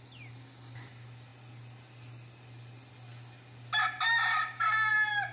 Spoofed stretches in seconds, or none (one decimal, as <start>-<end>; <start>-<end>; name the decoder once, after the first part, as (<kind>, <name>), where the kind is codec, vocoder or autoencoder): none

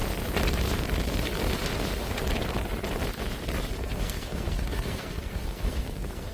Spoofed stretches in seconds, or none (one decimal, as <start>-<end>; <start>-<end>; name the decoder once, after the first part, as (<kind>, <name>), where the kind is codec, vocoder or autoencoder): 3.8-6.3 (codec, SNAC)

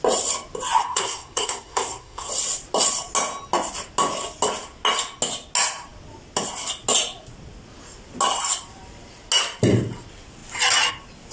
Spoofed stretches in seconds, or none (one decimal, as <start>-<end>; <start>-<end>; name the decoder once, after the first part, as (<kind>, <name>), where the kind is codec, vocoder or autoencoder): 0.8-2.3 (codec, SNAC)

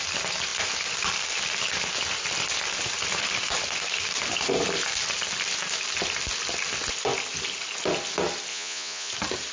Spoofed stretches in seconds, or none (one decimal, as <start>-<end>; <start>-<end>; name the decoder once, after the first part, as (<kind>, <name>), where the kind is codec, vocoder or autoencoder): 8.5-9.1 (vocoder, Vocos)

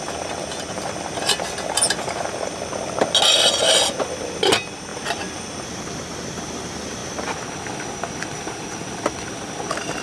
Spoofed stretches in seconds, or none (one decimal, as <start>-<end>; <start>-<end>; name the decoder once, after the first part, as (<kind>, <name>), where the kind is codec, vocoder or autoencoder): none